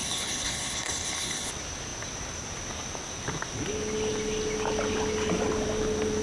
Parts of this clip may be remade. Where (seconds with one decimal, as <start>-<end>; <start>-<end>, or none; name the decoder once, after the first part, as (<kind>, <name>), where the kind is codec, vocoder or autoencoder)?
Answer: 0.0-1.5 (codec, HILCodec)